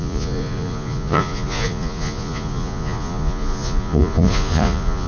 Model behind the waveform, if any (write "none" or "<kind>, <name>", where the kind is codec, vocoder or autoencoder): vocoder, Vocos